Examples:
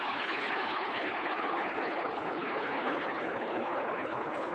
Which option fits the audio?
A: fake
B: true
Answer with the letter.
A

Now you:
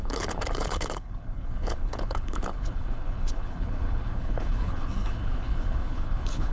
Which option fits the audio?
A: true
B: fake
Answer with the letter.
B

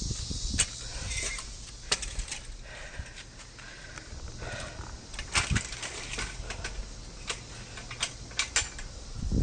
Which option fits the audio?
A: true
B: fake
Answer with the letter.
A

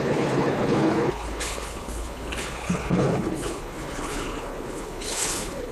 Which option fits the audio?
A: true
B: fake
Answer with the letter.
B